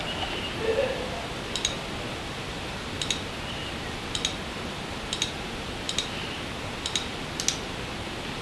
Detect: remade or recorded recorded